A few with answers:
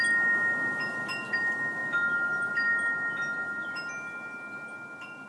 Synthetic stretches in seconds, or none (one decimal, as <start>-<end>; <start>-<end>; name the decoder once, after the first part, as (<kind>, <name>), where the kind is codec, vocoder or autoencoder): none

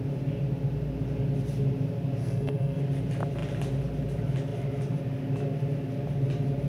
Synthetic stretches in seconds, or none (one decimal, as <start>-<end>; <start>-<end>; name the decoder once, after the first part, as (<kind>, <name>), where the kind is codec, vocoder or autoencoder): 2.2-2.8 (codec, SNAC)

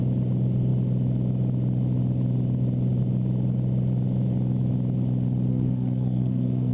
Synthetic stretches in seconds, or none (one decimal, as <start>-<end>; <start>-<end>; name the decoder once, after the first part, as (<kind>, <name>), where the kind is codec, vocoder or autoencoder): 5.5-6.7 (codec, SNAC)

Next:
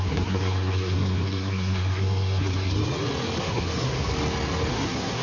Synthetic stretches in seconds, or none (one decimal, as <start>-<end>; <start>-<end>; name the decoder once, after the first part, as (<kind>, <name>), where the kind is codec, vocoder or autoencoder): 0.0-2.8 (codec, SNAC); 3.4-4.1; 4.7-5.2

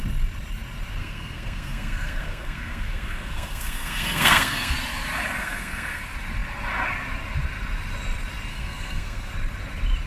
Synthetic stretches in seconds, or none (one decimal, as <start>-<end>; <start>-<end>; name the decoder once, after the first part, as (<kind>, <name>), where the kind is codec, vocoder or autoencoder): 1.0-4.7 (codec, SNAC); 5.4-6.0; 8.5-9.3

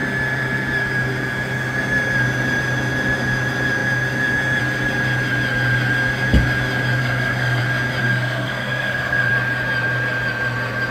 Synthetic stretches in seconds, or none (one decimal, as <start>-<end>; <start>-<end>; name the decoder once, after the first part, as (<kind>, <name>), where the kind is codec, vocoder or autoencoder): 7.0-7.6 (codec, SNAC); 8.0-9.3

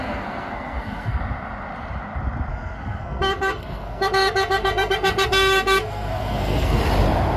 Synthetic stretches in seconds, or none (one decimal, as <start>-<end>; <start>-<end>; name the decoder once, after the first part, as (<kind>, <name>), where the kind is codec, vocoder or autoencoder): 0.0-1.2 (codec, SNAC); 2.5-6.8

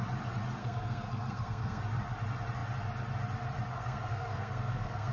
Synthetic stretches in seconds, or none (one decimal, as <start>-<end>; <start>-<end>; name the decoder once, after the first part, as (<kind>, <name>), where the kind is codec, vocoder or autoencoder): 0.6-1.8 (codec, SNAC); 3.7-5.1